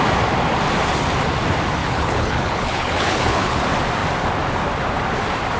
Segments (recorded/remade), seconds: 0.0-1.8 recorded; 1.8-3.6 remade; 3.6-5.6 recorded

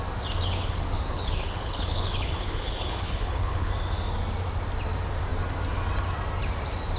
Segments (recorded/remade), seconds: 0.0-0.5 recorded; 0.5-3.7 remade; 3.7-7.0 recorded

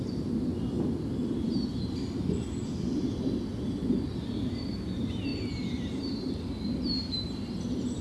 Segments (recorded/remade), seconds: 0.0-8.0 recorded

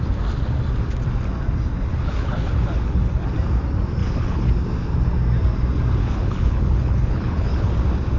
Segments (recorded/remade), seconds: 0.0-1.9 recorded; 1.9-3.3 remade; 3.3-4.0 recorded; 4.0-4.5 remade; 4.5-6.0 recorded; 6.0-7.7 remade; 7.7-8.2 recorded

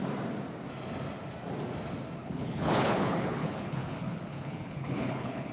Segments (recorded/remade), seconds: 0.0-2.2 recorded; 2.2-5.5 remade